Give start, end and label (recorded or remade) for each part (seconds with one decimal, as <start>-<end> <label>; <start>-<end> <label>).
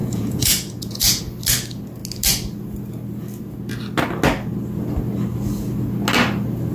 0.0-1.2 remade; 1.2-6.7 recorded